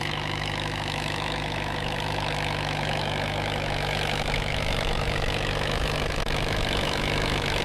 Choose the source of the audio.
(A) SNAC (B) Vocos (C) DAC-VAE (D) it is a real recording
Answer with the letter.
C